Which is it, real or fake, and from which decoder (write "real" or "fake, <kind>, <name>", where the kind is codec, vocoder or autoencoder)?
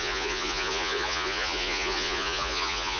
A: fake, vocoder, Vocos